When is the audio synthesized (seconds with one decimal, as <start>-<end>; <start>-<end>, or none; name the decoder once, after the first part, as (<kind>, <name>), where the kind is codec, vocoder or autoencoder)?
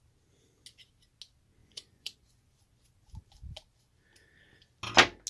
1.6-2.6 (vocoder, Vocos)